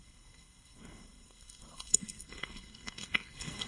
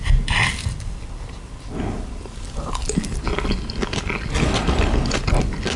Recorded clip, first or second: second